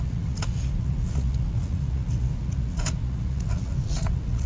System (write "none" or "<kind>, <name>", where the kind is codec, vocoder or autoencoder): vocoder, Vocos